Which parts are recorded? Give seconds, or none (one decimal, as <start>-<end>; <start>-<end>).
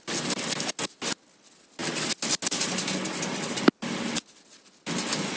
0.0-5.4